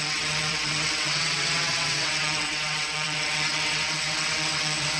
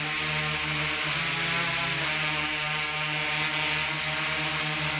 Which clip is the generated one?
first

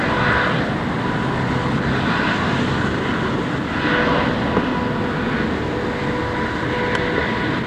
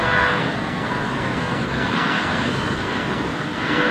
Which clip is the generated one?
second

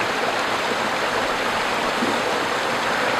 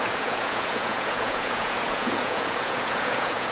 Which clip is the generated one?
second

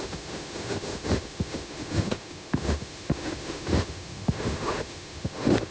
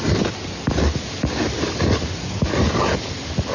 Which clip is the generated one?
first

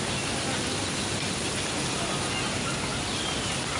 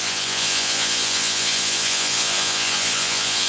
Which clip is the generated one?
second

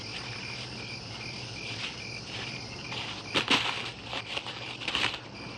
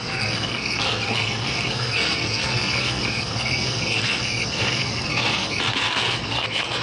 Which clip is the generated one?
second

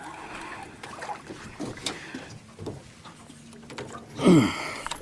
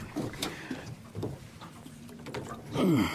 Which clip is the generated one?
second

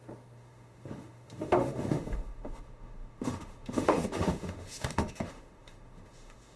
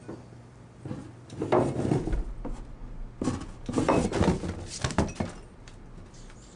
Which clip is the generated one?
first